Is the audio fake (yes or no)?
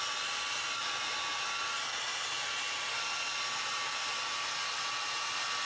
no